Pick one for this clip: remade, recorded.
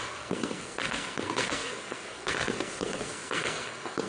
remade